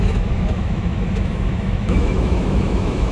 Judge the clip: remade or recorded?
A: remade